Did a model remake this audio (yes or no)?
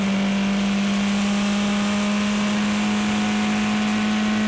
no